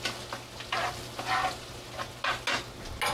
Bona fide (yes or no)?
yes